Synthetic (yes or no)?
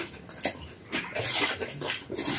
no